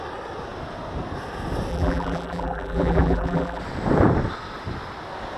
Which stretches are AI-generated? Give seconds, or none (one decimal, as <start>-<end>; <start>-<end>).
1.7-3.6